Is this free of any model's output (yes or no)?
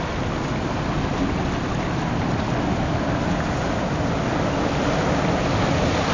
yes